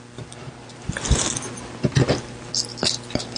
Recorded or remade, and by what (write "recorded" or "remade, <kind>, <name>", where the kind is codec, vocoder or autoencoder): recorded